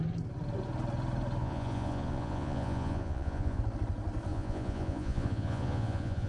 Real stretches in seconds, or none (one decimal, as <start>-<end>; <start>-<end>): 0.0-1.4; 3.6-4.3